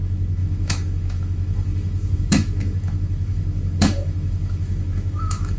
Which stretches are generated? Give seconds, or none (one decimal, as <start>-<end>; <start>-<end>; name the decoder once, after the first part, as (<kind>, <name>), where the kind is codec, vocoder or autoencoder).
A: 0.0-5.6 (autoencoder, DAC-VAE)